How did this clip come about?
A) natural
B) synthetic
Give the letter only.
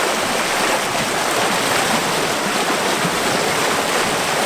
A